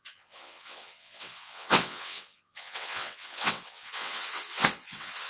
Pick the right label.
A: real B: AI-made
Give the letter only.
B